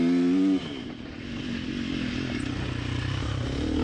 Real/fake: real